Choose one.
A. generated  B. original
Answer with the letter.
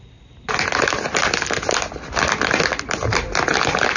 B